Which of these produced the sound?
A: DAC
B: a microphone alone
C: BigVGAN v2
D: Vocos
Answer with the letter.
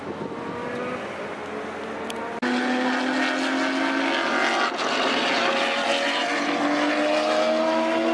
B